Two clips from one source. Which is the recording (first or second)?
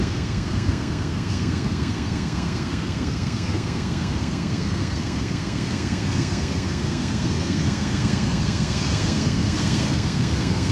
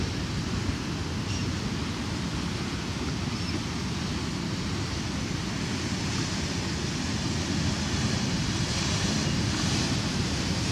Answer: second